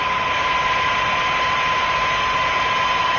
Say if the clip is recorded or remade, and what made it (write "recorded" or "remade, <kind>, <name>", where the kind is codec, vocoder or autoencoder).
recorded